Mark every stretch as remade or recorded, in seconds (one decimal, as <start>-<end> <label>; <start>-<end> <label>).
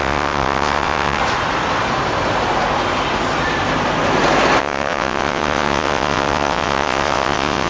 0.0-1.2 remade; 1.2-4.6 recorded; 4.6-7.7 remade